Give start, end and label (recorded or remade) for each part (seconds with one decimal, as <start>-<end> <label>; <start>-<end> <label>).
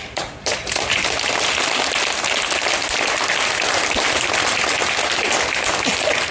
0.0-6.3 recorded